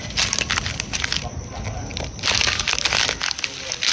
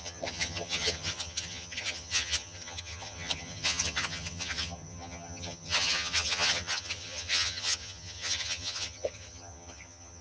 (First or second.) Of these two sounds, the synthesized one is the second